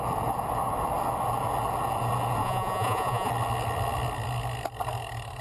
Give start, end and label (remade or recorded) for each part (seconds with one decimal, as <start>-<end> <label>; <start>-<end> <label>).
0.0-2.4 recorded; 2.4-3.3 remade; 3.3-5.4 recorded